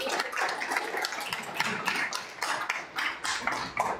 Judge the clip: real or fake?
real